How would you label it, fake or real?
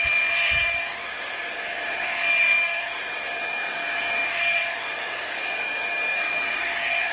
fake